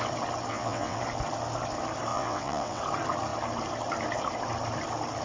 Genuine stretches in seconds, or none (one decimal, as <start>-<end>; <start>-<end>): 0.0-0.5; 1.0-2.1; 2.8-5.2